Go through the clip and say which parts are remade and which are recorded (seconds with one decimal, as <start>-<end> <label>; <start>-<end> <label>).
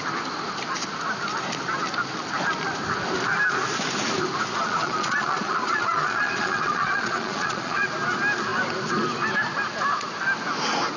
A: 0.0-4.6 recorded; 4.6-7.9 remade; 7.9-11.0 recorded